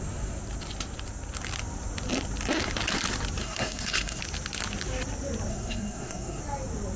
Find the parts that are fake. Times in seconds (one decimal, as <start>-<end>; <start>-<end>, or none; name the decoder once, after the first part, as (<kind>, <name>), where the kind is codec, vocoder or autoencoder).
3.4-4.2 (codec, SNAC); 5.5-6.4